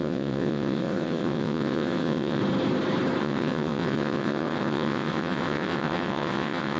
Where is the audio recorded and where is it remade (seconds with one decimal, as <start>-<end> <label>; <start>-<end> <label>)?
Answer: 0.0-2.4 remade; 2.4-3.2 recorded; 3.2-6.8 remade